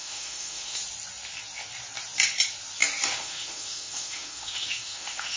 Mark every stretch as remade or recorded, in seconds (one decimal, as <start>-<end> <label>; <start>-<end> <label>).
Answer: 0.0-0.8 remade; 0.8-3.1 recorded; 3.1-5.4 remade